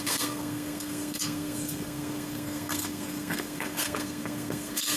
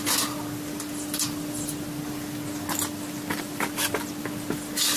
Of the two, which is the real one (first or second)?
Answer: second